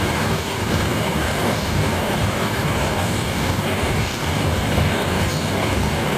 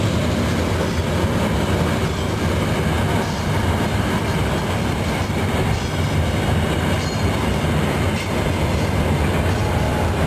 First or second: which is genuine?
second